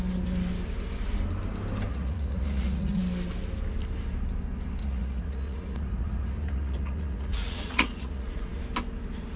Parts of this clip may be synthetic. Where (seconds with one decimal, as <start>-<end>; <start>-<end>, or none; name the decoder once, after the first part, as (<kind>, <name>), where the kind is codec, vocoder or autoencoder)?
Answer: 1.9-3.0 (vocoder, Vocos); 4.8-8.6